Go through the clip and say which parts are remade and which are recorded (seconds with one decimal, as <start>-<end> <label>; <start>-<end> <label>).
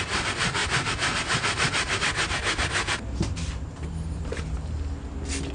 0.0-5.5 recorded